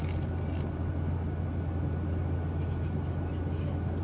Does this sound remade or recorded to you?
recorded